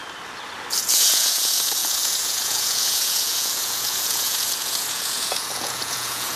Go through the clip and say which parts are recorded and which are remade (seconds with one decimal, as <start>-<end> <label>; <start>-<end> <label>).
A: 0.0-0.8 recorded; 0.8-6.4 remade